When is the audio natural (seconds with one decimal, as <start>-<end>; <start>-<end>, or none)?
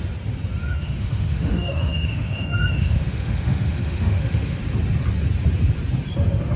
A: 0.0-0.6; 4.6-6.6